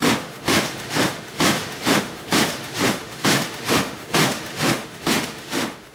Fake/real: fake